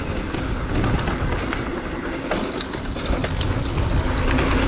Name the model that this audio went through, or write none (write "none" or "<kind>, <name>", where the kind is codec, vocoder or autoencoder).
none